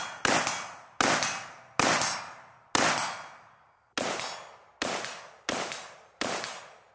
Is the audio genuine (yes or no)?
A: yes